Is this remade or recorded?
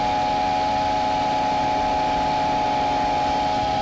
recorded